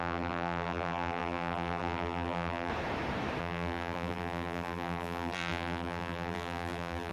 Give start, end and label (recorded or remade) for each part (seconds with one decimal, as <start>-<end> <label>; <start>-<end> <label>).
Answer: 0.0-2.7 remade; 2.7-3.4 recorded; 3.4-7.1 remade